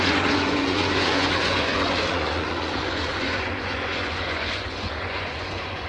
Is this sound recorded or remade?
remade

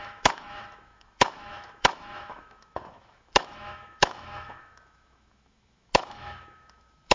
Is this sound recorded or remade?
remade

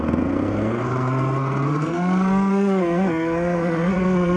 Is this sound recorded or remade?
remade